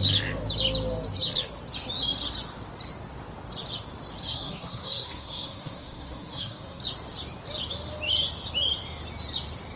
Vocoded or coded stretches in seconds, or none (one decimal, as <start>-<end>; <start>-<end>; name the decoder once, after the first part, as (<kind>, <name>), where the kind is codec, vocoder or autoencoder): 4.2-6.8 (codec, SNAC)